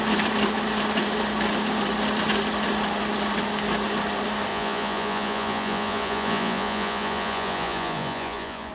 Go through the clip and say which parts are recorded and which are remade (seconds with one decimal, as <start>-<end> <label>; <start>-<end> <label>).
0.0-4.5 recorded; 4.5-8.7 remade